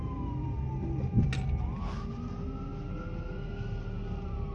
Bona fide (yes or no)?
yes